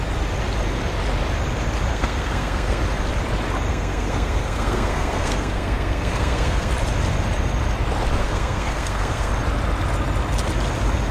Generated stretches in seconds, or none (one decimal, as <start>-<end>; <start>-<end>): 1.9-2.8; 3.7-6.7; 8.2-9.3